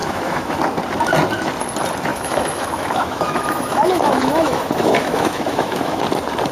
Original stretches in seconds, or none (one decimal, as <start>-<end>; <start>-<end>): 0.6-2.1; 6.0-6.5